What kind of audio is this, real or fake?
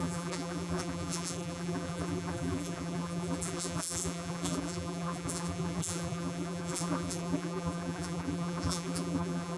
fake